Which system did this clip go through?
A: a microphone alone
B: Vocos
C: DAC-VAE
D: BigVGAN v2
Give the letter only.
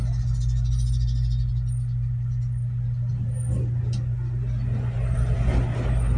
A